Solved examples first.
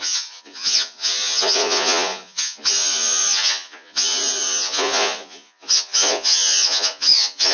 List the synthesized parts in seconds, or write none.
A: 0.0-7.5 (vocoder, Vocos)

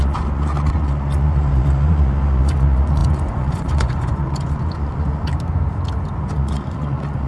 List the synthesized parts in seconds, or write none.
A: 0.0-5.3 (vocoder, Vocos); 6.2-7.3

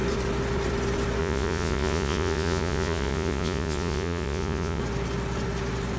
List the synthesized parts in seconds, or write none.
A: 1.2-4.8 (vocoder, Vocos)

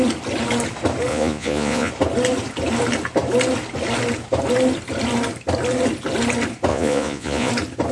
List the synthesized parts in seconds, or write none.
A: 1.1-1.9 (vocoder, Vocos); 6.7-7.5

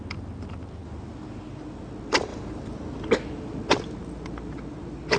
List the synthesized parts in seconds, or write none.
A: none

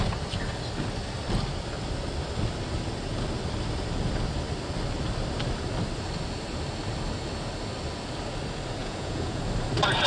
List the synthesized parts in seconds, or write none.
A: 8.8-9.4 (vocoder, Vocos)